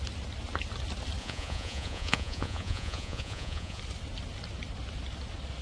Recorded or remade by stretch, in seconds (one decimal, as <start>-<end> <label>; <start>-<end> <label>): 0.0-1.2 recorded; 1.2-3.8 remade; 3.8-5.6 recorded